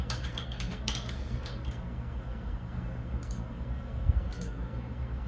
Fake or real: fake